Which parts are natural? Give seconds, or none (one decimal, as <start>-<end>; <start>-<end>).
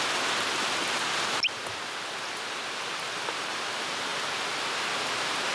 0.0-5.5